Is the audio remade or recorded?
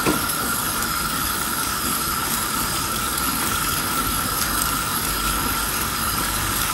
remade